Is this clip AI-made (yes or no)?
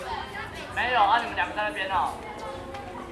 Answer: no